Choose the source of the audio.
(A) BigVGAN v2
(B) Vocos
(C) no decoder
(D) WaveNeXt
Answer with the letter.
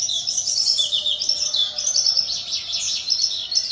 C